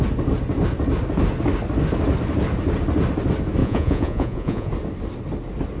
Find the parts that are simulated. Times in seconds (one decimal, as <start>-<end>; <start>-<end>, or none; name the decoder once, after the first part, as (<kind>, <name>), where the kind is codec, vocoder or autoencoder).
3.6-4.7 (vocoder, Vocos)